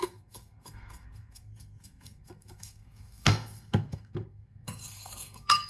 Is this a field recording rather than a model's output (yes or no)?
no